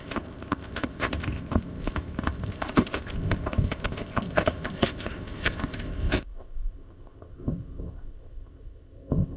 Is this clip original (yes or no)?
no